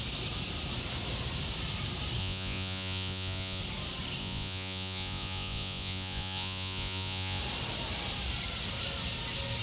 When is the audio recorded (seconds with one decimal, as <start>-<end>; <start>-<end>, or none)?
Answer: 0.0-2.2; 3.6-4.2; 7.4-9.6